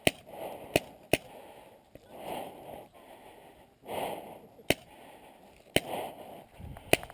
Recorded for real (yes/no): yes